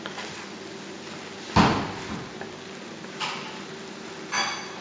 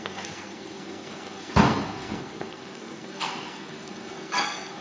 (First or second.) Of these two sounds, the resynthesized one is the second